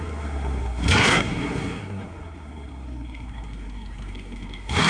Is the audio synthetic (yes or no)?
yes